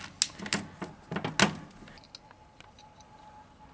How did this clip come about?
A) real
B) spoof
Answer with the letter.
A